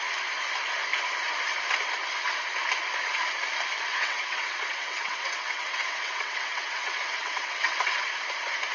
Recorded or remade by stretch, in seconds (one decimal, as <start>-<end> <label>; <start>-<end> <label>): 0.0-3.9 recorded; 3.9-8.1 remade; 8.1-8.7 recorded